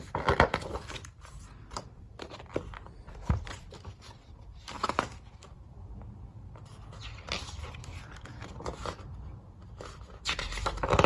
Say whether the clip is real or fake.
fake